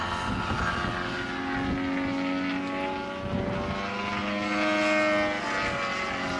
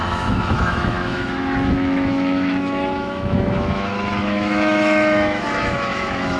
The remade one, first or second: second